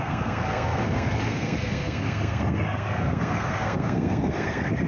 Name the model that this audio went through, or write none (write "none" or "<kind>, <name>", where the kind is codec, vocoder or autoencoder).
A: codec, SNAC